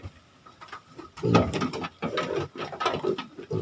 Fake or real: real